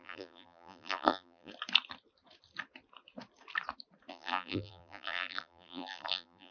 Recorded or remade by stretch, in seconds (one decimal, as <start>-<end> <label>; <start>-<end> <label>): 0.0-1.5 remade; 1.5-4.1 recorded; 4.1-6.5 remade